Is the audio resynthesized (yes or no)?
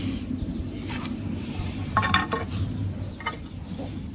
yes